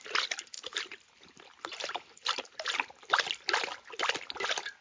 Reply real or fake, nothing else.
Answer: real